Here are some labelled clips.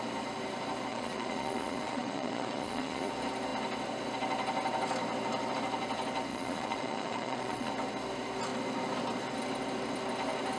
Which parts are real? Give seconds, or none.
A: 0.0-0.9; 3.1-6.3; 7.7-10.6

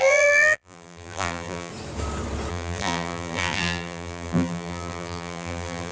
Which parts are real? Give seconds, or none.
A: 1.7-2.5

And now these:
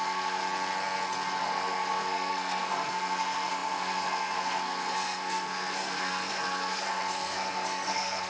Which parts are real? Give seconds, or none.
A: 0.4-1.4

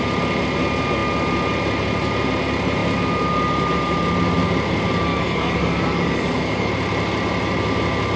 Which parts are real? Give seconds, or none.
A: 0.0-5.1; 6.7-8.2

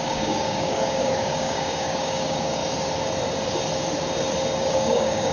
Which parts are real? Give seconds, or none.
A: 2.6-4.6

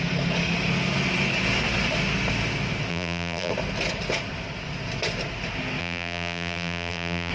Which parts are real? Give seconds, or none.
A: 0.0-2.9; 3.5-5.8

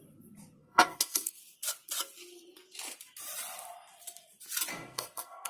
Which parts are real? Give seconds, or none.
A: 0.0-0.6; 1.4-4.7

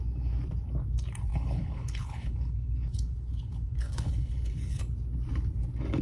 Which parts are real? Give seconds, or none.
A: 0.0-1.3; 4.8-6.0